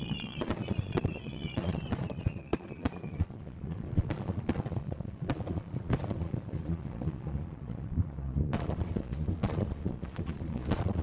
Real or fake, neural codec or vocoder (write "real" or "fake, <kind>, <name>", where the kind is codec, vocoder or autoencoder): fake, vocoder, Vocos